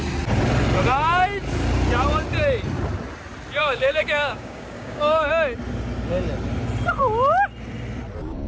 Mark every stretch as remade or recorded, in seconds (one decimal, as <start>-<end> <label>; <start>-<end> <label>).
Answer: 0.0-3.6 recorded; 3.6-5.3 remade; 5.3-8.5 recorded